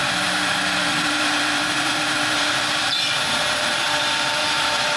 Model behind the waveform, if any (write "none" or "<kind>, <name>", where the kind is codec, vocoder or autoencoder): vocoder, BigVGAN v2